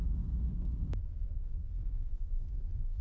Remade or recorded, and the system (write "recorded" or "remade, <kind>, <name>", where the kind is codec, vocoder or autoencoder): remade, codec, SNAC